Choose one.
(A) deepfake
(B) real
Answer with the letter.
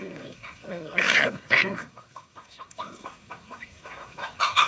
A